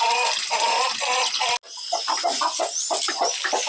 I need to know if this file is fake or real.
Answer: real